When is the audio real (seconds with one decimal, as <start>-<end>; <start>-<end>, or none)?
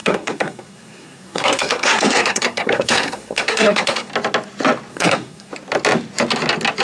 4.1-4.9; 5.5-6.8